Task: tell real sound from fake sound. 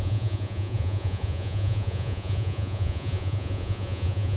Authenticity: fake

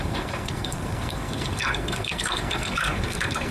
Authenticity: fake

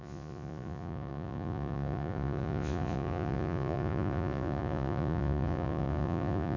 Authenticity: fake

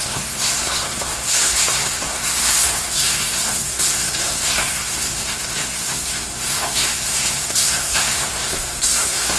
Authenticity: fake